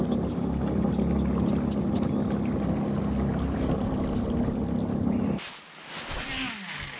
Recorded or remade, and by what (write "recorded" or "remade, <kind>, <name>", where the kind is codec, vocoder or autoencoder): recorded